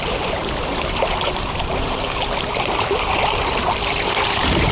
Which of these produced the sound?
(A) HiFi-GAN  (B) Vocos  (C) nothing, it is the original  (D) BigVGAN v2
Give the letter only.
D